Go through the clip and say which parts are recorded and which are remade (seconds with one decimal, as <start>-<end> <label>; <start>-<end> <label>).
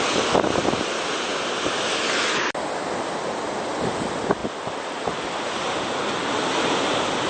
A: 0.0-7.3 recorded